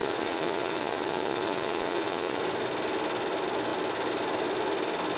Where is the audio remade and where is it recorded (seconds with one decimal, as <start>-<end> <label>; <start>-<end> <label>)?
0.0-2.4 remade; 2.4-5.2 recorded